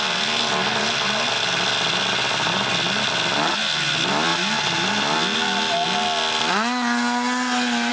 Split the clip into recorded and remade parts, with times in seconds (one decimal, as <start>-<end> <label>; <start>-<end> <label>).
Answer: 0.0-7.9 recorded